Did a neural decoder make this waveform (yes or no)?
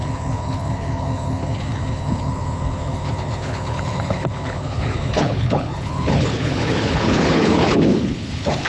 yes